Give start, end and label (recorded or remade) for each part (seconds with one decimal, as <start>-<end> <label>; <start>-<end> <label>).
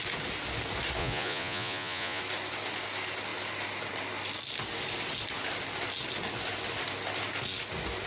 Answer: 0.0-1.0 recorded; 1.0-2.2 remade; 2.2-8.1 recorded